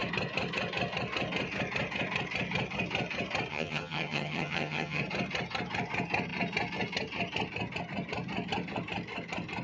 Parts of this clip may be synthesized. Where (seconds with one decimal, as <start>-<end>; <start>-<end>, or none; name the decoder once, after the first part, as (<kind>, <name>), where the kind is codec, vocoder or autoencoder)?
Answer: 3.5-5.0 (vocoder, HiFi-GAN)